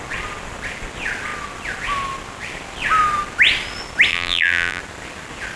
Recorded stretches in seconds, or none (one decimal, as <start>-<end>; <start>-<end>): 0.0-4.1; 4.8-5.6